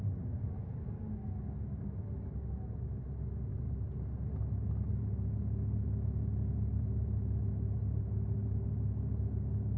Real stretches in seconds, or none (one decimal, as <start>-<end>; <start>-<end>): 0.0-9.8